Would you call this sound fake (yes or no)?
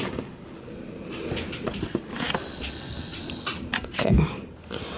no